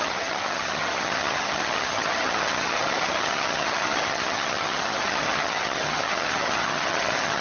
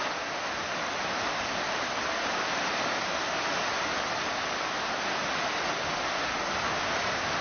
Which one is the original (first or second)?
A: second